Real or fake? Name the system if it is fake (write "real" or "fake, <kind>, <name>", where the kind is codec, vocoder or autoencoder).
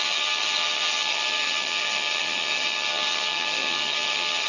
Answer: fake, vocoder, HiFi-GAN